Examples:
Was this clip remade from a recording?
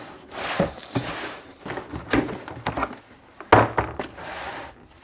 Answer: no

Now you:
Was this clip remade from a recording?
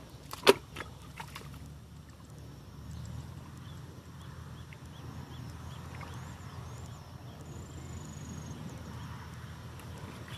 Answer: no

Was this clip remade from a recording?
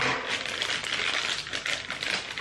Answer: no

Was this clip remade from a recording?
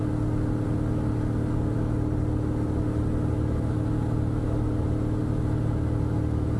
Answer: no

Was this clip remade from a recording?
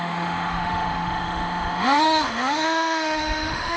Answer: yes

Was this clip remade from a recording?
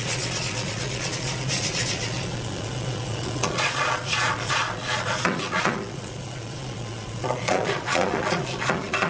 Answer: yes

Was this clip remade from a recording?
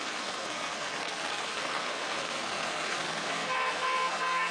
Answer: yes